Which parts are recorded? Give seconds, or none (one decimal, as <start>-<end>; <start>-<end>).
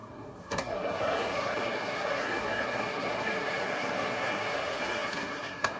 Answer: none